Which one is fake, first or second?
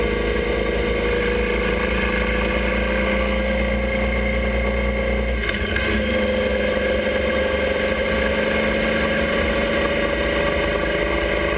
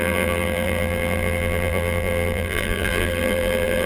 second